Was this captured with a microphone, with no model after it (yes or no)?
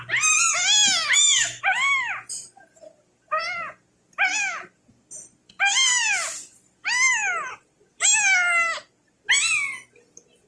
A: yes